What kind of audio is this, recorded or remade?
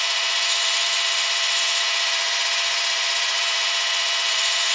remade